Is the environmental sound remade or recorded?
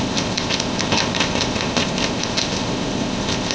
remade